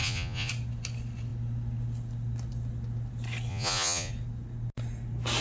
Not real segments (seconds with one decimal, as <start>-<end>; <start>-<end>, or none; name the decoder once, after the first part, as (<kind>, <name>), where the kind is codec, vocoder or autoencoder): 0.0-0.5 (vocoder, Vocos); 3.5-4.1